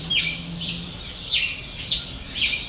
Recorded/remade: remade